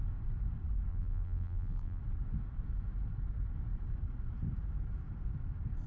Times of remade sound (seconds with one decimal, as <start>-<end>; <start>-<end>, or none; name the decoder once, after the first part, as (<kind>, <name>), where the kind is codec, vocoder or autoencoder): 0.9-2.0 (vocoder, BigVGAN v2)